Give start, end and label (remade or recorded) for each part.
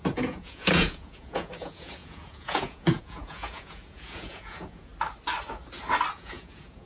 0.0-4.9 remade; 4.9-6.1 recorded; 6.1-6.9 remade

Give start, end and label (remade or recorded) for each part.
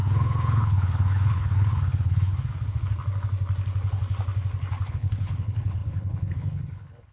0.0-2.5 remade; 2.5-4.9 recorded; 4.9-7.1 remade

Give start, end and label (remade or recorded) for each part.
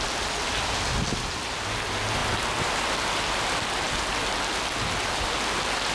0.0-5.9 recorded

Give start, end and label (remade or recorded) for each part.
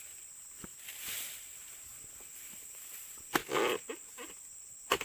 0.0-5.0 recorded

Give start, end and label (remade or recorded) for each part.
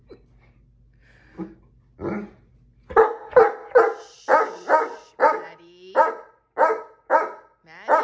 0.0-4.3 recorded; 4.3-6.2 remade; 6.2-8.0 recorded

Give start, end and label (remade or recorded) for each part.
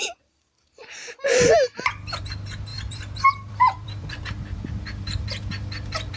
0.0-2.2 remade; 2.2-2.7 recorded; 2.7-4.2 remade; 4.2-6.2 recorded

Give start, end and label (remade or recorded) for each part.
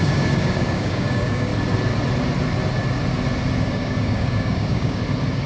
0.0-1.5 remade; 1.5-3.6 recorded; 3.6-5.0 remade; 5.0-5.5 recorded